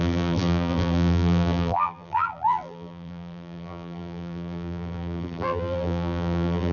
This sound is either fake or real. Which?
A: fake